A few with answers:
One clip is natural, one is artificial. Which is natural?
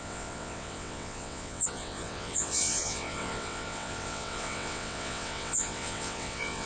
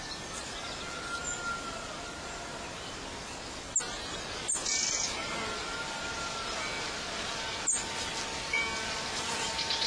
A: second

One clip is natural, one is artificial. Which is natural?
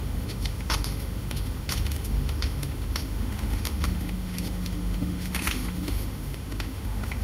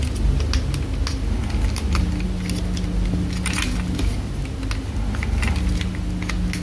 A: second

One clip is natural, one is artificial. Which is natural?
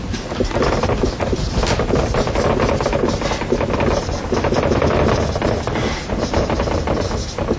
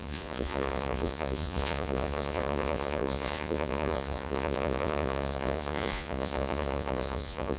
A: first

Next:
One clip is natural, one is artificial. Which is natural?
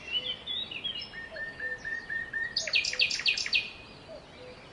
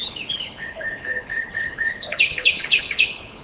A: first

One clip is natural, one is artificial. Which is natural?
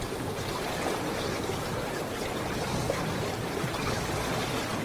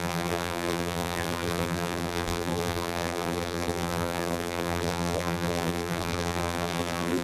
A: first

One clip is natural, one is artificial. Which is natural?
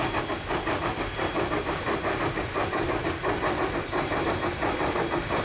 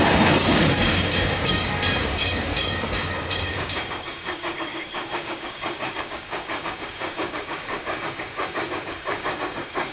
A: first